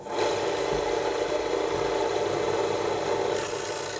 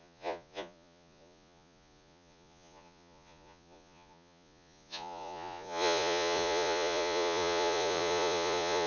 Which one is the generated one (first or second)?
second